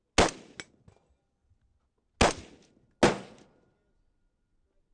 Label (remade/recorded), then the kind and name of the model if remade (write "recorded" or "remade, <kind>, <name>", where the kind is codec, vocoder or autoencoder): recorded